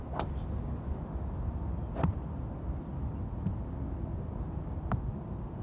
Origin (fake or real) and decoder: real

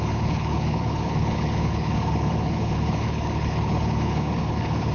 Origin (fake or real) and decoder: fake, codec, HILCodec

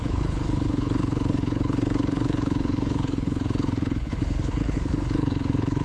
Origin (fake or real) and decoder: fake, codec, HILCodec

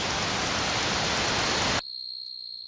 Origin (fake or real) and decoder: real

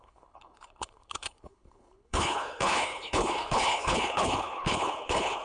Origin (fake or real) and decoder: fake, codec, HILCodec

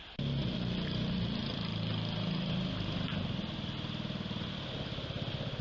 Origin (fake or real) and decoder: real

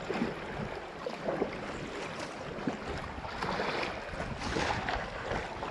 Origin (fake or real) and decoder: real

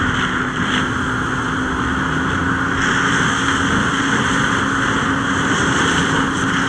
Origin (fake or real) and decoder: real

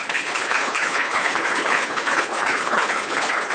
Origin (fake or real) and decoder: fake, codec, HILCodec